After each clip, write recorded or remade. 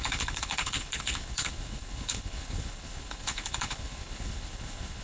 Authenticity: remade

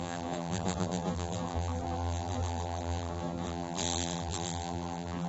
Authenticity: remade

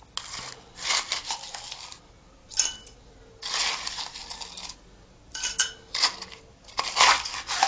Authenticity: recorded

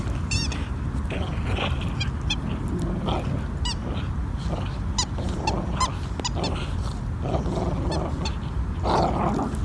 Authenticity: recorded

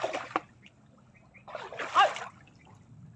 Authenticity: recorded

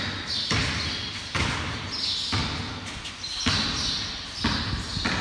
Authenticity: recorded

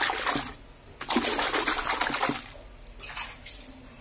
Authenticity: recorded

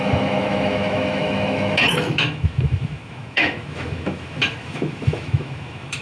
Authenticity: remade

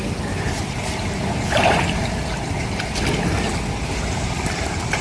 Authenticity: recorded